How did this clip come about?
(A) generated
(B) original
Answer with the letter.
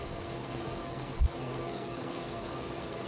A